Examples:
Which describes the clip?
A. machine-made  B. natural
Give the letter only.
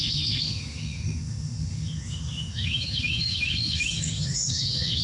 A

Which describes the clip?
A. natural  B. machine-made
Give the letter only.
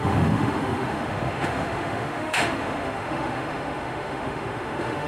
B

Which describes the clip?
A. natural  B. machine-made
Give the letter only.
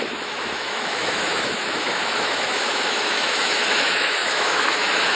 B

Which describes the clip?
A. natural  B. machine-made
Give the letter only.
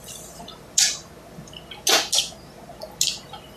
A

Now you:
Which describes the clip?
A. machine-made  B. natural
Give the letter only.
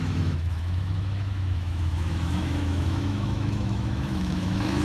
A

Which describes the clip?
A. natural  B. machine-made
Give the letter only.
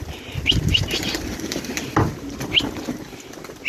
A